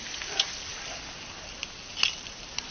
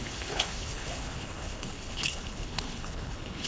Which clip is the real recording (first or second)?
first